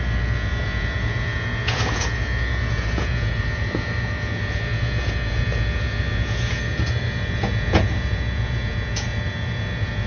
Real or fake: fake